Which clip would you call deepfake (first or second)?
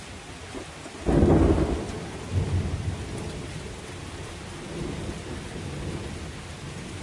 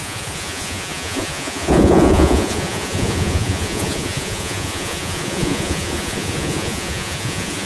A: second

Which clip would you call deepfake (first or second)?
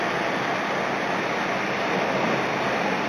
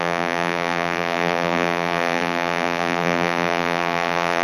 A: second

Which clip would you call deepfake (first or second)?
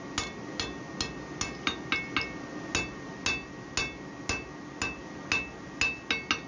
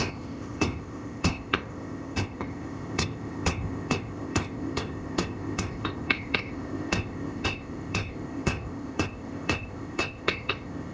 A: second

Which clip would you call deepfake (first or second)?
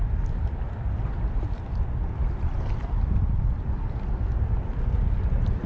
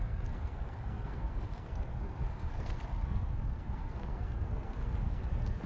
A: second